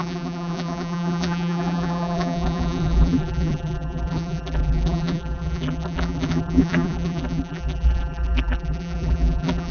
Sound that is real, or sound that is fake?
fake